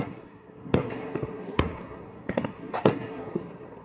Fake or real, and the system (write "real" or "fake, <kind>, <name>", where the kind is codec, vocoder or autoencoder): fake, codec, SNAC